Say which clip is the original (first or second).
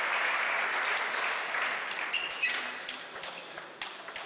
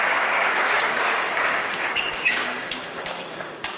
first